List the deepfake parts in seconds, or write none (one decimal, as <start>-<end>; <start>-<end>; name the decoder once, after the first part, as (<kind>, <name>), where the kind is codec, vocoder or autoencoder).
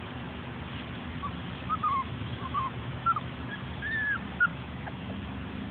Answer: 1.8-3.5 (autoencoder, DAC-VAE); 4.5-5.1